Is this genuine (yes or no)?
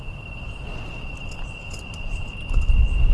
no